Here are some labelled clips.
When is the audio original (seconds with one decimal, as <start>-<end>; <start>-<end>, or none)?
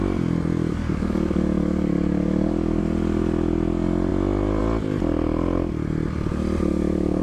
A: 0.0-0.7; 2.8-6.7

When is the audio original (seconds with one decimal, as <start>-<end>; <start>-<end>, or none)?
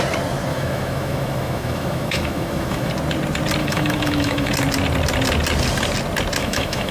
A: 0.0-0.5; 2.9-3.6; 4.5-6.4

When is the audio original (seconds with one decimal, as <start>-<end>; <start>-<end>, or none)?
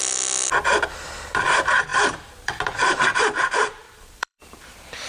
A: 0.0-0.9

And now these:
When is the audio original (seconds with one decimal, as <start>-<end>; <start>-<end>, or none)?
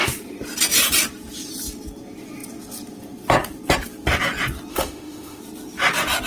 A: 0.0-4.7; 5.4-6.3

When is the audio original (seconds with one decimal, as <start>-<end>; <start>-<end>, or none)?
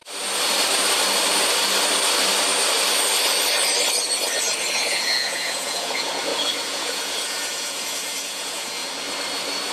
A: 0.0-4.6; 8.8-9.7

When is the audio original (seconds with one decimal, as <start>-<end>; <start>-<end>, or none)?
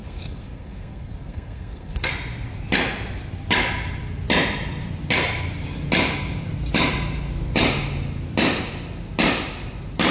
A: 2.1-10.1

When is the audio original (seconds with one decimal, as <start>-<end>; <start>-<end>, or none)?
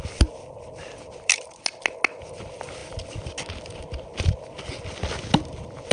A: 0.0-5.9